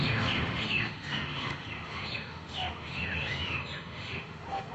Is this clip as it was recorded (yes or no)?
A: no